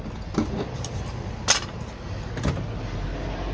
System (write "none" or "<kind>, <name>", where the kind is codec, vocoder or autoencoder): none